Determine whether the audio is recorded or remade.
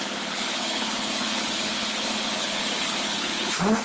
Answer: remade